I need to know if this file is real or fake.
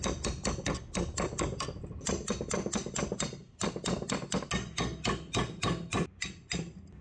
real